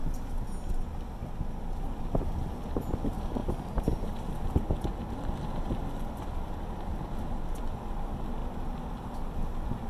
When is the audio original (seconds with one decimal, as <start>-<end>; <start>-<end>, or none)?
0.0-3.4; 4.3-9.9